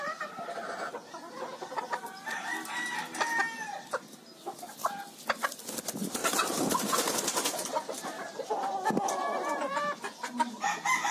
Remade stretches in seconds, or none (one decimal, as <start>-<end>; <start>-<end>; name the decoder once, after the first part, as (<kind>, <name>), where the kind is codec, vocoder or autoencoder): none